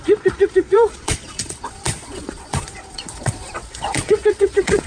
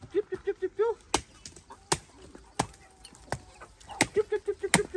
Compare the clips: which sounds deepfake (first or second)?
first